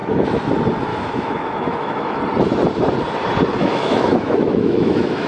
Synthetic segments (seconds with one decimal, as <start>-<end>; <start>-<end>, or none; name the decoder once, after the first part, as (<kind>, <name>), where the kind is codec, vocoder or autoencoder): 0.0-0.5 (autoencoder, DAC-VAE); 0.9-2.2; 3.6-5.3